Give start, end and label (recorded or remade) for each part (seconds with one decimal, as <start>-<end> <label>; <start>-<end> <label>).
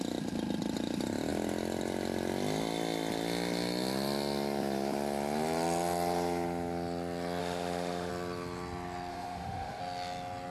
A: 0.0-7.4 recorded; 7.4-8.1 remade; 8.1-9.1 recorded; 9.1-9.8 remade; 9.8-10.5 recorded